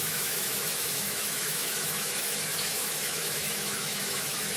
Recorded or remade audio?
remade